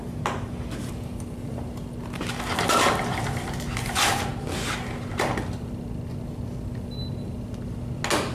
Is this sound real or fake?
real